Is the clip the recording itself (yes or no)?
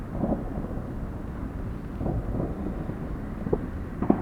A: yes